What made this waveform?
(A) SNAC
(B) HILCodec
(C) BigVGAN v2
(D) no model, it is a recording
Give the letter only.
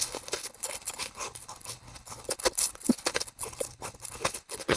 B